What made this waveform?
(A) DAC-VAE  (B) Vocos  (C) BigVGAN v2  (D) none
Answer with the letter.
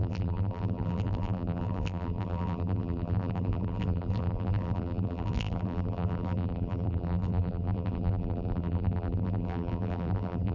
C